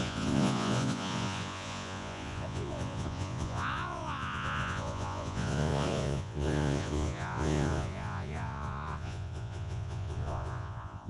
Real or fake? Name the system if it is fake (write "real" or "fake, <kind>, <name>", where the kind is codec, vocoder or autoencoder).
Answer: fake, vocoder, Vocos